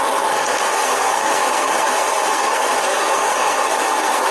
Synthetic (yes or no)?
yes